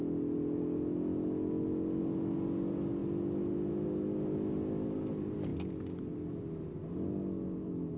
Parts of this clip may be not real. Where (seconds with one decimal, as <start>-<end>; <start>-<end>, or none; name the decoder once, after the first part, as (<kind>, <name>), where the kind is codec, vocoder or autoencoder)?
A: none